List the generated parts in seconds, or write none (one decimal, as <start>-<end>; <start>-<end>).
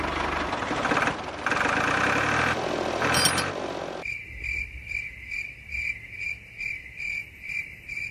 7.2-8.1